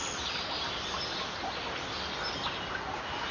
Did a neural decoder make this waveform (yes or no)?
no